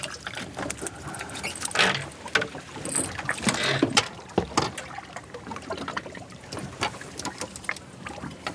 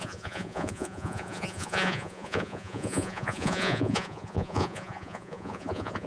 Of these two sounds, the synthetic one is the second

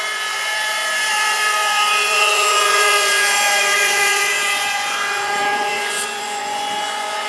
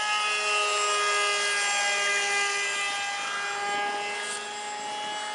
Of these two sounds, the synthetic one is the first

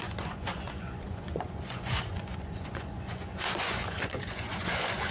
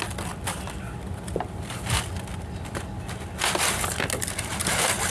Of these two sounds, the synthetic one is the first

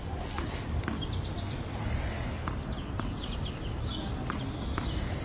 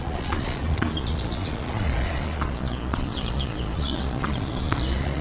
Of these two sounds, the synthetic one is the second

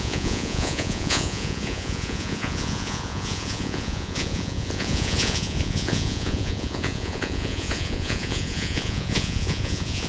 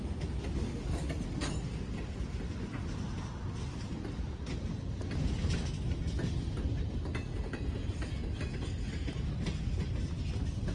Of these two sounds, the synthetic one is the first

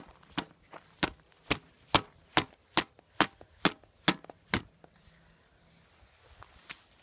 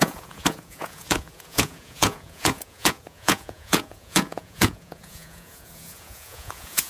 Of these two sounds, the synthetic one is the second